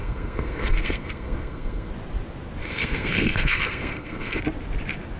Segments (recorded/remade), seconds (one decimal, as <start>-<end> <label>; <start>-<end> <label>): 0.0-1.9 remade; 1.9-2.6 recorded; 2.6-4.4 remade; 4.4-5.2 recorded